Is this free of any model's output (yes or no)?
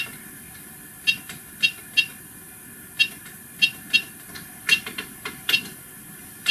yes